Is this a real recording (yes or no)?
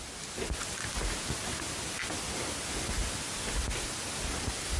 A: yes